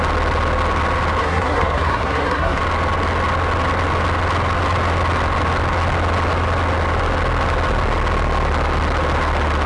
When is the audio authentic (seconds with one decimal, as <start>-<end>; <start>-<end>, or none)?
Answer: 0.0-1.2; 2.6-9.7